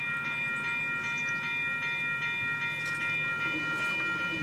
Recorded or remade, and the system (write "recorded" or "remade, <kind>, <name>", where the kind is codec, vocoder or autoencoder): recorded